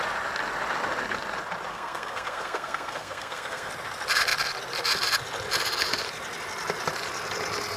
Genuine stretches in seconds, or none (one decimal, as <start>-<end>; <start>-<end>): 0.0-1.7; 3.7-7.8